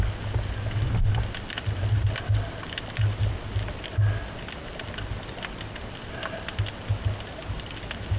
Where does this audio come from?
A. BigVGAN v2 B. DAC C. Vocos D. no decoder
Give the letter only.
D